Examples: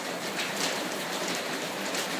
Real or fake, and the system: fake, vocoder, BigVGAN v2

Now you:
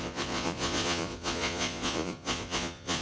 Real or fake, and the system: fake, vocoder, Vocos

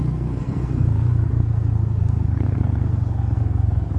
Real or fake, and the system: fake, codec, SNAC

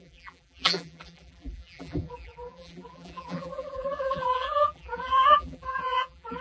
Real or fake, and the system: fake, vocoder, BigVGAN v2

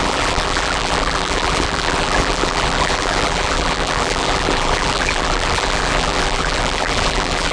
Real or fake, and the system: fake, vocoder, BigVGAN v2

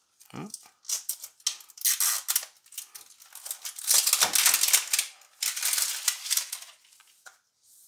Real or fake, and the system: real